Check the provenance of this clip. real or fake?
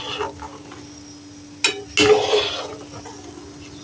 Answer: real